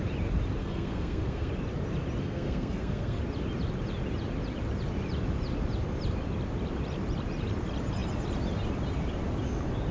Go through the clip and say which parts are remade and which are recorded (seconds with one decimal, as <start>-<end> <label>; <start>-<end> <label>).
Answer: 0.0-0.6 recorded; 0.6-1.5 remade; 1.5-2.2 recorded; 2.2-3.2 remade; 3.2-9.9 recorded